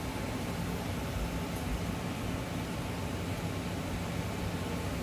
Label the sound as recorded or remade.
recorded